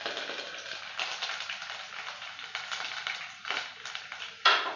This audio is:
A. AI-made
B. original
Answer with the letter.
B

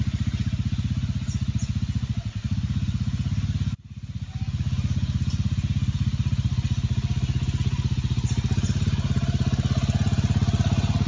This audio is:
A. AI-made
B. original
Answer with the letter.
B